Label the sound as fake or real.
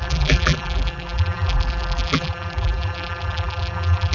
fake